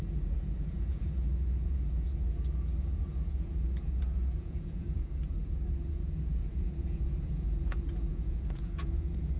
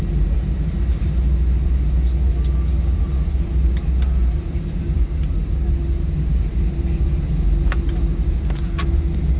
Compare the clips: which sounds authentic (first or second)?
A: second